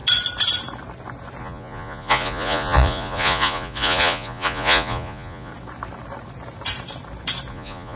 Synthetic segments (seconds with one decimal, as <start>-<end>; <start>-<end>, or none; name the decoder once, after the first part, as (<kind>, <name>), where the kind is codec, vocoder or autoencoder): 1.4-5.5 (vocoder, Vocos); 7.5-8.0

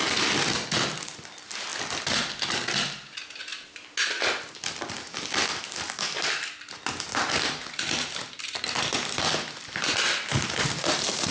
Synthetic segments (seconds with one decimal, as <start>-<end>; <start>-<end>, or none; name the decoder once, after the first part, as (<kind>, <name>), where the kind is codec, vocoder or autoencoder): none

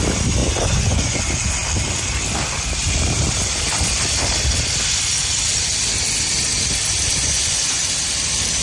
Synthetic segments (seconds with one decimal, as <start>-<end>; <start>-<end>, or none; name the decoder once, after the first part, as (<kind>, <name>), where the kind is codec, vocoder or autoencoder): 0.4-1.2 (vocoder, Vocos); 7.2-7.8

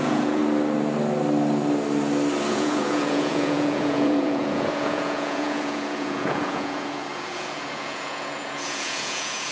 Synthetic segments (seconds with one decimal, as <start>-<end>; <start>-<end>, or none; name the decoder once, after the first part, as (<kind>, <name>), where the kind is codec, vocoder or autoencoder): 0.0-0.4 (vocoder, Vocos); 2.5-9.5

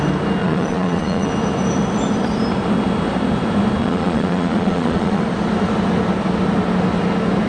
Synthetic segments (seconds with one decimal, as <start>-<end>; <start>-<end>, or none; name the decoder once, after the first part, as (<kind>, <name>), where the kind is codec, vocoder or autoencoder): 0.4-1.3 (vocoder, Vocos); 3.8-5.2

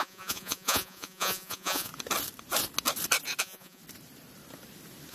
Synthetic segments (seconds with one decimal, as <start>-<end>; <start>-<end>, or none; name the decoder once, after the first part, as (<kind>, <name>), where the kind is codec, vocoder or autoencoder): 0.0-1.9 (vocoder, Vocos); 3.4-3.8

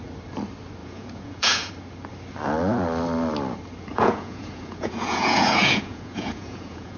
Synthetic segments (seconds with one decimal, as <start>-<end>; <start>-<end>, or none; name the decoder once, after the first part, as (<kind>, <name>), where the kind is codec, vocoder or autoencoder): 0.8-1.7 (vocoder, Vocos); 3.9-7.0

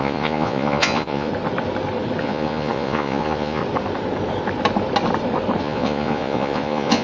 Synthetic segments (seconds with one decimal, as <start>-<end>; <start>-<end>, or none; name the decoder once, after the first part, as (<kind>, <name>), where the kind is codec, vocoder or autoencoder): 0.0-1.3 (vocoder, Vocos); 2.2-3.6; 5.6-7.0